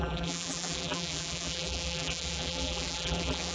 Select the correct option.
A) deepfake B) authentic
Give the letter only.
A